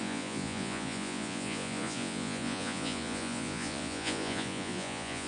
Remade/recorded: remade